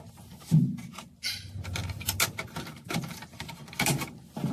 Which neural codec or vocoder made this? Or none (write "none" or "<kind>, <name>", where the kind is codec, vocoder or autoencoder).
vocoder, BigVGAN v2